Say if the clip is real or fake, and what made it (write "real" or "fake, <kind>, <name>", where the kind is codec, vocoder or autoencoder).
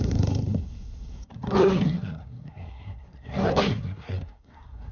fake, codec, SNAC